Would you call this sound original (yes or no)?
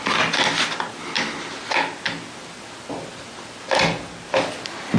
yes